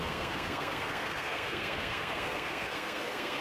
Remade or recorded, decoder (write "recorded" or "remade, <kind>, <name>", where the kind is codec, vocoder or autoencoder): remade, codec, SNAC